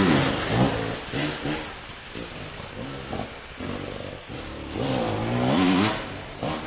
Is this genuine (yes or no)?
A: yes